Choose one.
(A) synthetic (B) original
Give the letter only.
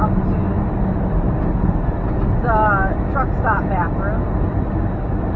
B